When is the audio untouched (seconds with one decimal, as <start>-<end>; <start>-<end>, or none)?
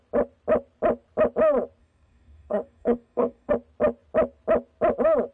0.0-1.8; 3.5-5.3